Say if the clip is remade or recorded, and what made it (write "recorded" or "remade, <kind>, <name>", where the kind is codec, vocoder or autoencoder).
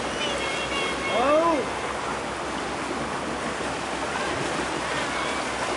recorded